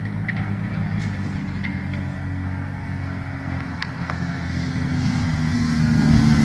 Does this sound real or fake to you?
fake